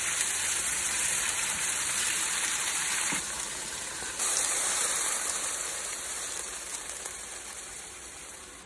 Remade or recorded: remade